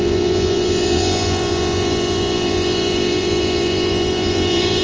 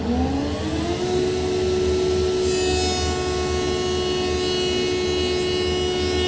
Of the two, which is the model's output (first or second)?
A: first